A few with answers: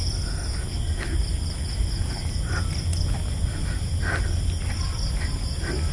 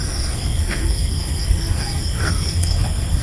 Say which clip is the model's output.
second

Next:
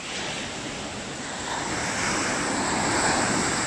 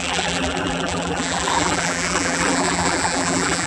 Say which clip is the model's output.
second